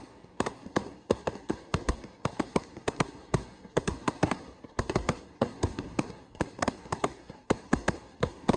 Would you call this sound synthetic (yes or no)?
yes